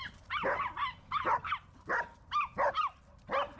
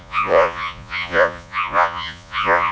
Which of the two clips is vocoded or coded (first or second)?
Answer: second